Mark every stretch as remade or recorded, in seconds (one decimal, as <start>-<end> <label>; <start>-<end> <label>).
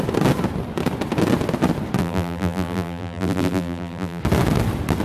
0.0-2.0 recorded; 2.0-4.2 remade; 4.2-5.0 recorded